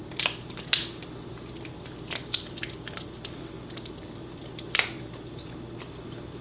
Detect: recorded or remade recorded